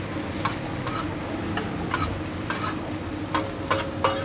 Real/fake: real